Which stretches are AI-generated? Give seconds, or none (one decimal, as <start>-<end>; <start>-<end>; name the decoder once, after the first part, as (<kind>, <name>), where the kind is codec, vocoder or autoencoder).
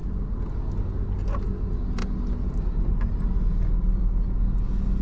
none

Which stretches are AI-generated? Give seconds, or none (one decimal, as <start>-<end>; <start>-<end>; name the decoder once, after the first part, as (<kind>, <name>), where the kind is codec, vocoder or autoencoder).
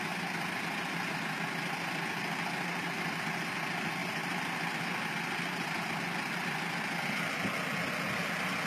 4.0-4.8 (vocoder, BigVGAN v2)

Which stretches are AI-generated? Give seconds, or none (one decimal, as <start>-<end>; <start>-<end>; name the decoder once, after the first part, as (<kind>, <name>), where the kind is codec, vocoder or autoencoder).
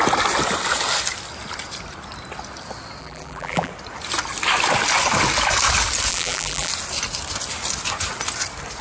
3.0-3.7 (vocoder, BigVGAN v2); 6.1-6.7